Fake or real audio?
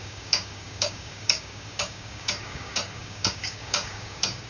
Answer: fake